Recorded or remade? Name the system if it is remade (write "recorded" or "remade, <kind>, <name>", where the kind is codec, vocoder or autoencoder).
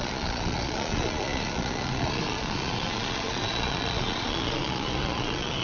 remade, vocoder, Vocos